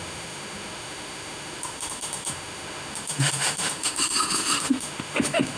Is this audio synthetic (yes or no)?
yes